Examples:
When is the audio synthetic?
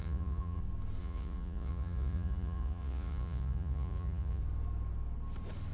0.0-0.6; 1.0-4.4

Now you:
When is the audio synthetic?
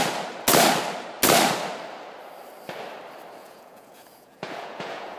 3.4-5.2